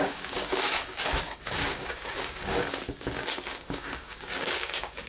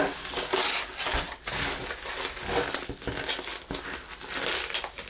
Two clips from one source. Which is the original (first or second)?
second